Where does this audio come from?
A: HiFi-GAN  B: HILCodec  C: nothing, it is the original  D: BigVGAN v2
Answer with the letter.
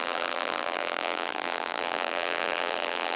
D